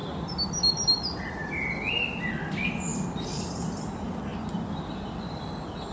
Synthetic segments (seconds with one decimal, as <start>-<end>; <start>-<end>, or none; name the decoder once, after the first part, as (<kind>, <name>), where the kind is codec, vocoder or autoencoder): none